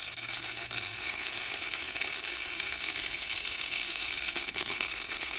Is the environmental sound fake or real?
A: fake